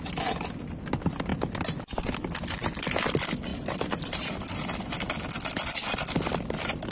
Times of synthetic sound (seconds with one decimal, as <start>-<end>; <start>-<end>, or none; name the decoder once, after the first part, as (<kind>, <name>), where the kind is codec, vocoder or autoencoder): none